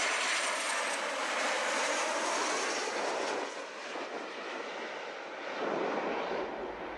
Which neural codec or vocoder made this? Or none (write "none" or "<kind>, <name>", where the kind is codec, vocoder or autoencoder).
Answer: none